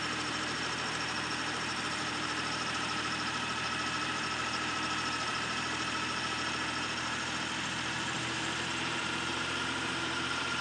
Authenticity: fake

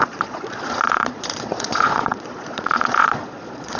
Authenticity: fake